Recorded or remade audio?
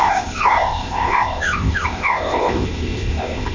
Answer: remade